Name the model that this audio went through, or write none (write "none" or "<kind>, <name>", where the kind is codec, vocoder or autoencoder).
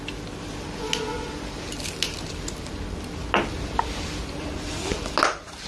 none